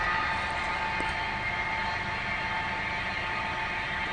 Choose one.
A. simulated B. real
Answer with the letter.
B